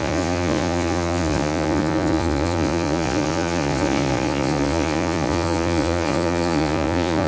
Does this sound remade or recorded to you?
remade